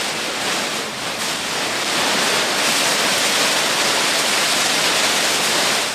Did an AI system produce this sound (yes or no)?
no